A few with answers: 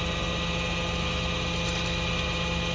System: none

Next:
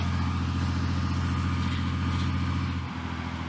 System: none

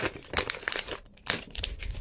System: vocoder, BigVGAN v2